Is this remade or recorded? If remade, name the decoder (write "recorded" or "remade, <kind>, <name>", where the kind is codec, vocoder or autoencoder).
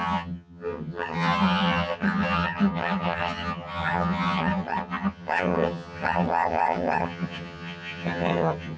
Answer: remade, vocoder, HiFi-GAN